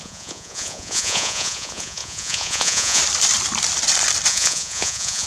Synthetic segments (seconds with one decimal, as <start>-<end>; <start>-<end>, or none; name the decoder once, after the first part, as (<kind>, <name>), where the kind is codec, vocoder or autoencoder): 0.0-3.0 (vocoder, Vocos); 4.3-5.3